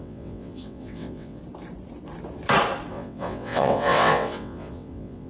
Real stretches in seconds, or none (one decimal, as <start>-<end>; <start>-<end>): 1.4-2.9